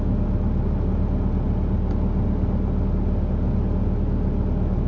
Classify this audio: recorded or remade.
recorded